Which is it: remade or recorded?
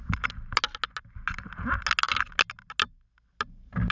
recorded